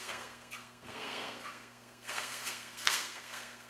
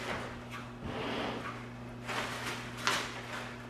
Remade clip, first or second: first